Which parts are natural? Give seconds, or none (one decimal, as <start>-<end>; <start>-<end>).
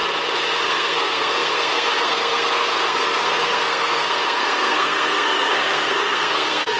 0.0-0.6